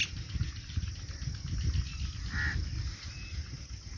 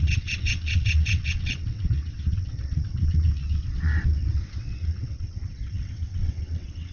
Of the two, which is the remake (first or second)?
second